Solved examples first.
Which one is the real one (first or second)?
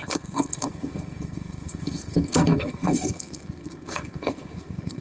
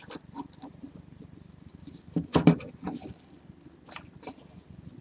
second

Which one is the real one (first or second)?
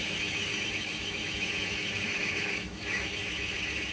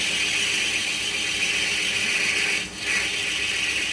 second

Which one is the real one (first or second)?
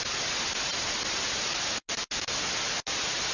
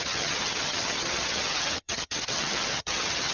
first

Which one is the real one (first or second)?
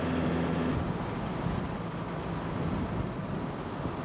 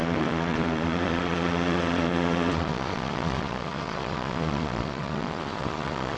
first